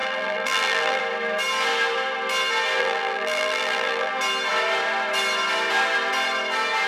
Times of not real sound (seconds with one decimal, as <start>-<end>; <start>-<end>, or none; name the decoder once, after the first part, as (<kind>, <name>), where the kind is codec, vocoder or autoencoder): 0.0-1.0 (vocoder, BigVGAN v2); 2.8-4.1